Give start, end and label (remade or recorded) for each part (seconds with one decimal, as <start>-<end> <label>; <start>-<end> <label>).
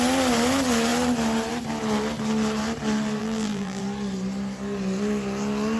0.0-3.2 recorded; 3.2-3.8 remade; 3.8-5.8 recorded